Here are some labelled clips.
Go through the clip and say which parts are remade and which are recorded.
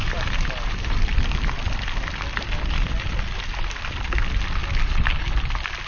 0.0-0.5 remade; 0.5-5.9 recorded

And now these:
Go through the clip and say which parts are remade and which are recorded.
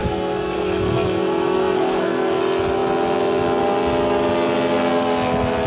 0.0-2.4 remade; 2.4-5.7 recorded